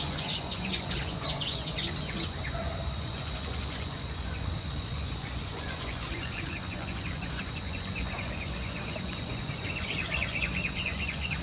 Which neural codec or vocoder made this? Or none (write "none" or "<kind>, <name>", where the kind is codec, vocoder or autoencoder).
vocoder, Vocos